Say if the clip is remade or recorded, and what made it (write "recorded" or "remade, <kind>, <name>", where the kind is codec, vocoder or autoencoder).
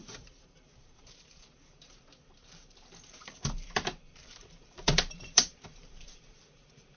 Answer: remade, vocoder, BigVGAN v2